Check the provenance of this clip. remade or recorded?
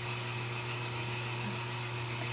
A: recorded